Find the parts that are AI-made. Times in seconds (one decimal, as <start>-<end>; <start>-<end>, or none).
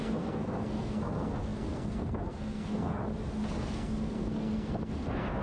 0.0-3.0; 3.6-5.4